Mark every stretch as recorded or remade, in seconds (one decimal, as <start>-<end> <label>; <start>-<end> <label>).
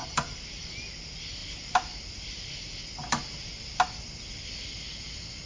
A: 0.0-0.7 remade; 0.7-1.4 recorded; 1.4-2.5 remade; 2.5-5.5 recorded